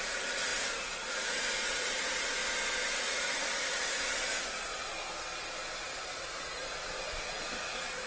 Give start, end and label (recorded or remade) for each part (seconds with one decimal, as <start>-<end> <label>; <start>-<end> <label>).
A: 0.0-2.4 remade; 2.4-3.0 recorded; 3.0-4.9 remade; 4.9-5.8 recorded; 5.8-8.1 remade